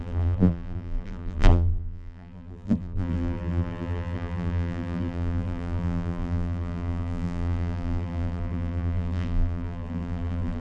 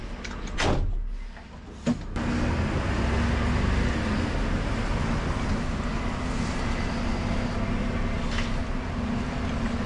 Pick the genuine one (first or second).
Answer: second